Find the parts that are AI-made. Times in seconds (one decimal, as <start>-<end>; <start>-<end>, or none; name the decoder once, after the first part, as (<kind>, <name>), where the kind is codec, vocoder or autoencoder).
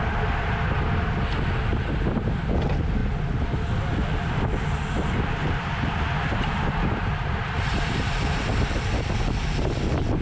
1.7-2.4 (vocoder, BigVGAN v2); 5.4-8.7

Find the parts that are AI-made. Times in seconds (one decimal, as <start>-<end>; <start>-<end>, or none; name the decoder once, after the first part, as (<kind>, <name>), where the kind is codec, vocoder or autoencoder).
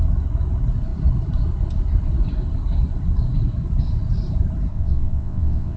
4.7-5.8 (vocoder, WaveNeXt)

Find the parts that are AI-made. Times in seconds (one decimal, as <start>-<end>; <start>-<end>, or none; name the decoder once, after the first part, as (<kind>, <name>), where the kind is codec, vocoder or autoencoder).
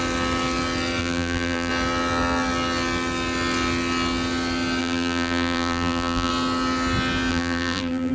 1.0-1.7 (vocoder, BigVGAN v2); 4.8-6.3; 7.3-8.1